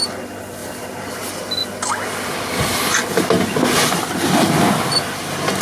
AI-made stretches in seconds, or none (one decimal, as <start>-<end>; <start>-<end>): 0.6-1.1